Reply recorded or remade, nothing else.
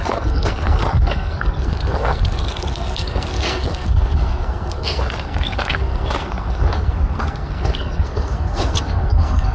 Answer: remade